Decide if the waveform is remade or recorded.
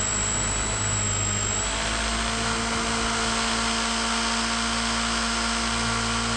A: recorded